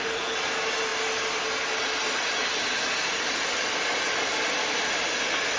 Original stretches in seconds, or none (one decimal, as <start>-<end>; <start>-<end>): 0.0-5.6